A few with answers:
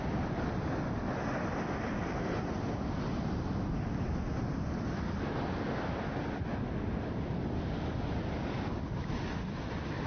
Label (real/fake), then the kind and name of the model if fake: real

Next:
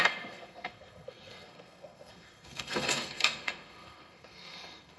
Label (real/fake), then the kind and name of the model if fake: fake, codec, SNAC